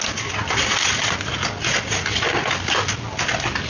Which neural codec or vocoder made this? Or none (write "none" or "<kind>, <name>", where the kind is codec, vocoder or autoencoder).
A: none